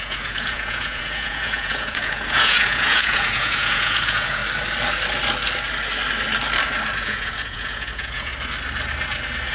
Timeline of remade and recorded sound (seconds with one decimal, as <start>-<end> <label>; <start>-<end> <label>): 0.0-4.4 remade; 4.4-7.0 recorded; 7.0-8.3 remade; 8.3-9.5 recorded